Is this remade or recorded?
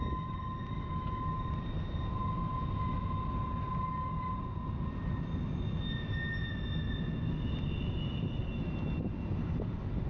recorded